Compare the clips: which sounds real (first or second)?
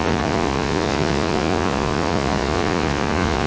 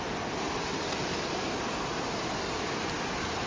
second